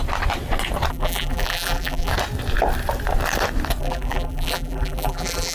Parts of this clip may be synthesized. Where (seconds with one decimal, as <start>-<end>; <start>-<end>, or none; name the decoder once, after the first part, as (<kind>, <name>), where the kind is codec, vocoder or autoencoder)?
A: 0.9-2.1 (vocoder, BigVGAN v2); 3.8-5.5